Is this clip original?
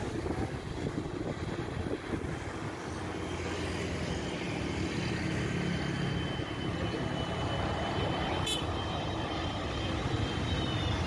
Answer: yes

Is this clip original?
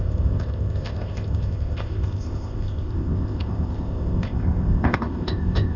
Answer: no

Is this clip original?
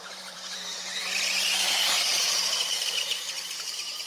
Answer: no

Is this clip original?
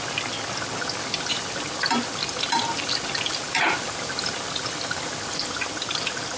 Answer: yes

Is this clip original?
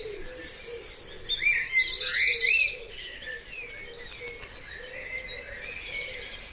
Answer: yes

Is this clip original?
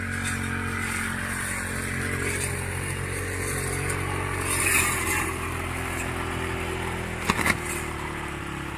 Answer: yes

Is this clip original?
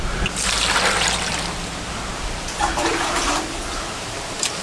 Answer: no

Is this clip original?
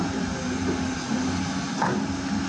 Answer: yes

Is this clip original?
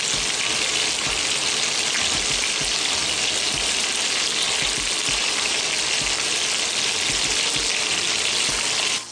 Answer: yes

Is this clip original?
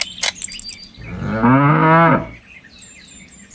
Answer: yes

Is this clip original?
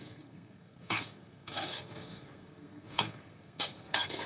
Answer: no